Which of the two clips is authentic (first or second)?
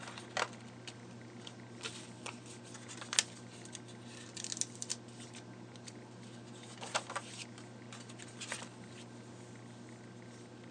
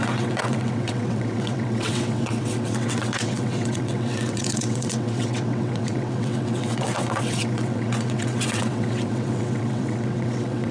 first